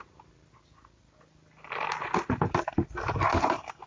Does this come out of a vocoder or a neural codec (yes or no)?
no